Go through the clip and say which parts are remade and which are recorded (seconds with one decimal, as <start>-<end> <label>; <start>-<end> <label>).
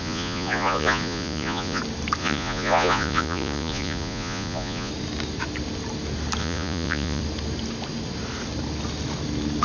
0.0-1.8 remade; 1.8-2.2 recorded; 2.2-4.9 remade; 4.9-6.4 recorded; 6.4-7.2 remade; 7.2-9.6 recorded